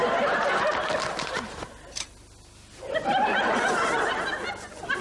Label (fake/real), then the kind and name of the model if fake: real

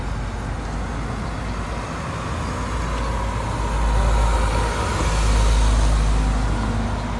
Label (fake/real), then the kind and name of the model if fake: real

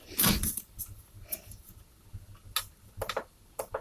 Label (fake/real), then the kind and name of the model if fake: real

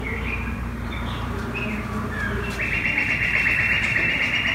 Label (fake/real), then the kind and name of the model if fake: fake, vocoder, BigVGAN v2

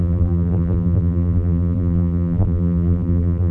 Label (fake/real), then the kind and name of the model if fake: fake, vocoder, BigVGAN v2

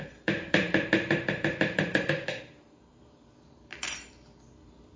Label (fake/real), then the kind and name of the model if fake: fake, vocoder, BigVGAN v2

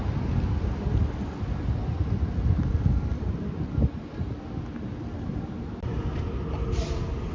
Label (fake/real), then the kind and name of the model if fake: real